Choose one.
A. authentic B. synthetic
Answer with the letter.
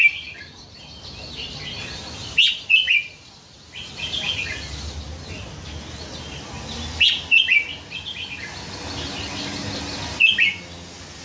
A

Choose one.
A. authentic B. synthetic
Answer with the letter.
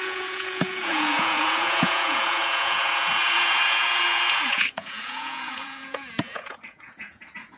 B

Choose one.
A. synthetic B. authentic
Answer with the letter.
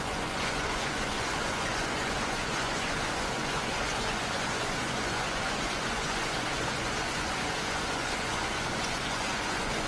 A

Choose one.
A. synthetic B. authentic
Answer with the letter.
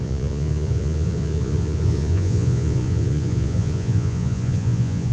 A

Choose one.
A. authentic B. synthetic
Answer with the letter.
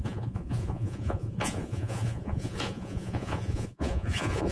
B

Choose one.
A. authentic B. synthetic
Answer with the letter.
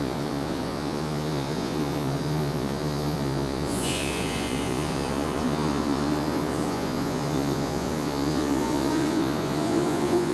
B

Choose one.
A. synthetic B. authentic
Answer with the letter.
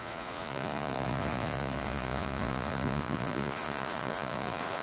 A